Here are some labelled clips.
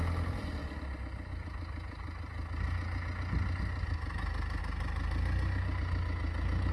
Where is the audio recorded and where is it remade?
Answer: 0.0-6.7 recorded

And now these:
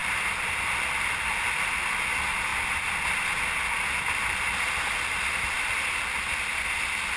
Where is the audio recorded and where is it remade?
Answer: 0.0-7.2 recorded

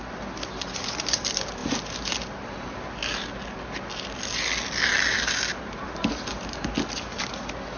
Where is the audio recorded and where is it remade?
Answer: 0.0-7.8 recorded

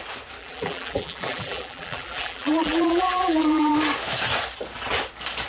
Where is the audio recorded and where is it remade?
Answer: 0.0-0.4 recorded; 0.4-3.7 remade; 3.7-5.5 recorded

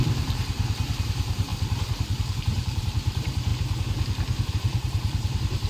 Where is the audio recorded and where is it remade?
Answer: 0.0-1.5 remade; 1.5-2.4 recorded; 2.4-3.5 remade; 3.5-4.5 recorded; 4.5-5.7 remade

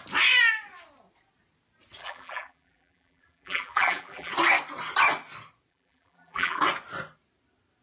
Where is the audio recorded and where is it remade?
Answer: 0.0-2.0 recorded; 2.0-4.3 remade; 4.3-5.7 recorded; 5.7-6.6 remade; 6.6-7.8 recorded